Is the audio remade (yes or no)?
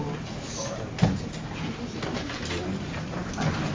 no